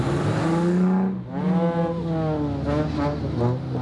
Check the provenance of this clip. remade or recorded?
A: recorded